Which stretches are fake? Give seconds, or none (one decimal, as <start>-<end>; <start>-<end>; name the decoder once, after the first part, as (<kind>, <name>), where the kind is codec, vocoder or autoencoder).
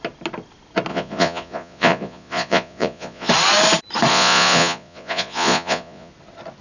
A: 0.9-3.3 (vocoder, Vocos); 4.1-6.1